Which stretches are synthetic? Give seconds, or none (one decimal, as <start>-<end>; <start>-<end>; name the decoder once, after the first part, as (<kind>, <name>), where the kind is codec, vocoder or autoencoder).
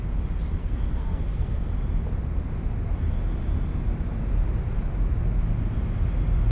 0.6-1.7 (codec, SNAC)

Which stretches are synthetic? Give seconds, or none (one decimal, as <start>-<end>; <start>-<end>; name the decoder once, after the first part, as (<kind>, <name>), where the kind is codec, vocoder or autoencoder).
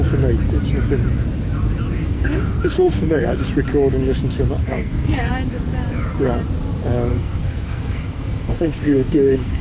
2.0-3.4 (codec, SNAC); 4.6-5.3; 7.1-9.6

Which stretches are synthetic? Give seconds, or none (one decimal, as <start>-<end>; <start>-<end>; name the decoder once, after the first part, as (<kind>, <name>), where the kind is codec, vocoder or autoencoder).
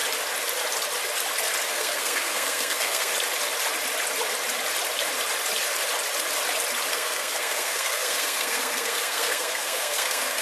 1.7-3.1 (codec, SNAC); 6.9-10.4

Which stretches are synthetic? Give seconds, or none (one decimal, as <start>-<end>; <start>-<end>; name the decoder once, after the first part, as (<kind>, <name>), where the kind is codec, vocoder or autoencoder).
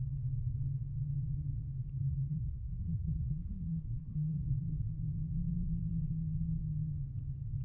1.9-4.4 (codec, SNAC)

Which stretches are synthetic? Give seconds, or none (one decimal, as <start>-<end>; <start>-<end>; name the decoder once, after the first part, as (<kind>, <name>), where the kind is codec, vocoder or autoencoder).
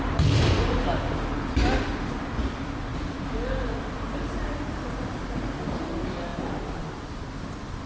none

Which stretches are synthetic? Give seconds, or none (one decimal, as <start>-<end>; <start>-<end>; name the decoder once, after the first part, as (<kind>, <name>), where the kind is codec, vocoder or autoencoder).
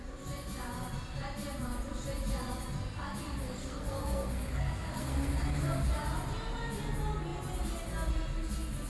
3.4-5.3 (codec, SNAC)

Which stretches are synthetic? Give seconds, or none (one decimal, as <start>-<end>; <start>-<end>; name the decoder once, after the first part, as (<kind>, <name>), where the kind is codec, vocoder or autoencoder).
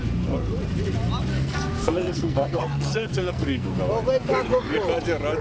1.3-3.8 (codec, SNAC)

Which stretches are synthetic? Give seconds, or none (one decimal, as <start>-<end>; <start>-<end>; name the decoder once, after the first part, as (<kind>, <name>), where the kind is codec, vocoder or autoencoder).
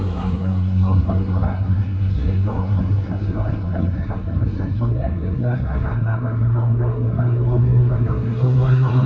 0.0-9.1 (codec, SNAC)